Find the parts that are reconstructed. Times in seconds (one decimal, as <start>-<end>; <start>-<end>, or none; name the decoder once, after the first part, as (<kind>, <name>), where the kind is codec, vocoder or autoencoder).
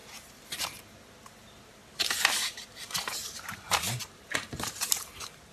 1.8-5.1 (vocoder, BigVGAN v2)